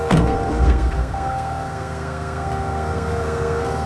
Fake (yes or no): yes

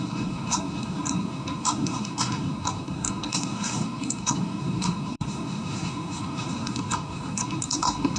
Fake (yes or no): yes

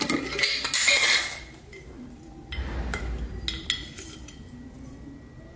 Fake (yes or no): no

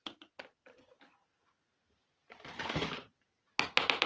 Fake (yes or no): no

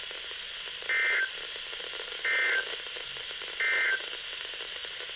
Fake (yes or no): no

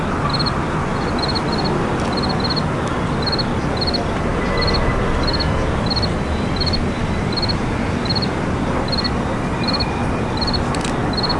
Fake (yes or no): no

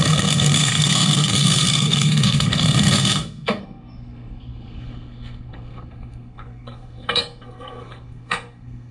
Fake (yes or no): yes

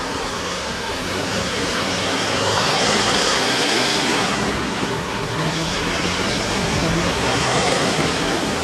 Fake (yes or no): yes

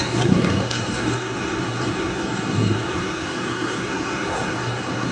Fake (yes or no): yes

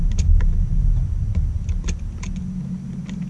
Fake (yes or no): no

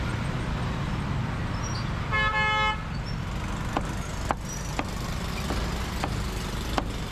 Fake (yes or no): no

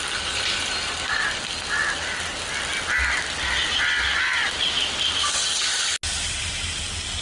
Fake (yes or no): no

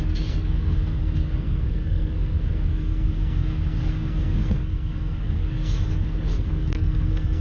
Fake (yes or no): yes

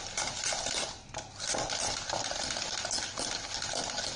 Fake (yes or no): no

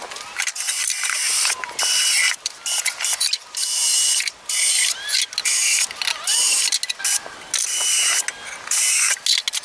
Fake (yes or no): no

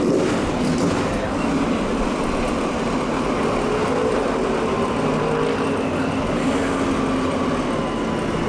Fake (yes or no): no